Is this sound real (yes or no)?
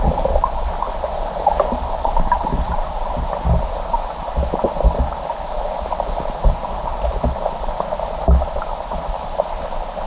yes